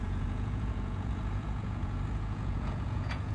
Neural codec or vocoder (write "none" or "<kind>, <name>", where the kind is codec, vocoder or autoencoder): vocoder, Vocos